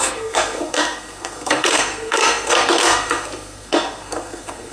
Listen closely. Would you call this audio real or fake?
fake